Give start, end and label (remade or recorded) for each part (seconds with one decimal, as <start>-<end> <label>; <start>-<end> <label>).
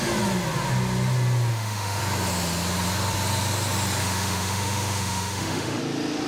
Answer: 0.0-1.5 recorded; 1.5-2.0 remade; 2.0-4.0 recorded; 4.0-5.8 remade; 5.8-6.3 recorded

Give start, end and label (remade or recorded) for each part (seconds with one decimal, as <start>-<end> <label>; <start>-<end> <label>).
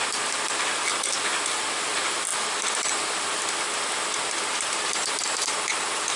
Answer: 0.0-6.2 recorded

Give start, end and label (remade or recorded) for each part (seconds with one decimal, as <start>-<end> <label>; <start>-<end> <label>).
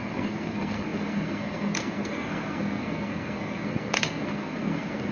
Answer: 0.0-5.1 remade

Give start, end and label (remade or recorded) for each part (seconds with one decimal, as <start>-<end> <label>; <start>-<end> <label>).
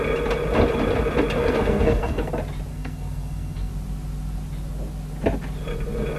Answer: 0.0-1.4 recorded; 1.4-2.3 remade; 2.3-2.7 recorded; 2.7-3.7 remade; 3.7-6.2 recorded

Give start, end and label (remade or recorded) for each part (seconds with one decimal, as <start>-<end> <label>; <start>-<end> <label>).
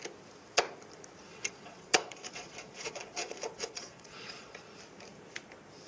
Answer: 0.0-1.3 recorded; 1.3-4.6 remade; 4.6-5.9 recorded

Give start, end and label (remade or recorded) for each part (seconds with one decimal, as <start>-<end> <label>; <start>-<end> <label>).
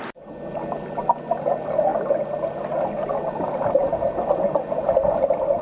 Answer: 0.0-5.6 recorded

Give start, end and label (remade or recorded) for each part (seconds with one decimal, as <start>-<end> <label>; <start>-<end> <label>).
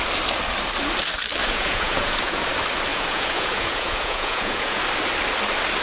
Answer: 0.0-1.4 recorded; 1.4-2.5 remade; 2.5-2.9 recorded; 2.9-4.8 remade; 4.8-5.8 recorded